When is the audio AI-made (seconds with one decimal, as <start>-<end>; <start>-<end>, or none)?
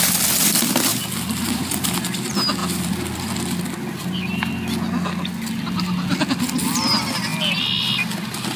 0.9-2.0; 2.6-5.2; 7.3-8.2